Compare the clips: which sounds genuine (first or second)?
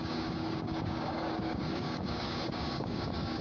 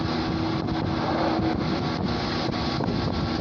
second